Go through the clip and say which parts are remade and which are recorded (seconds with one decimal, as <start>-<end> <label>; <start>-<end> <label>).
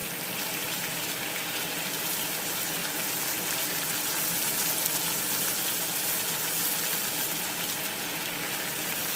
0.0-1.2 remade; 1.2-9.2 recorded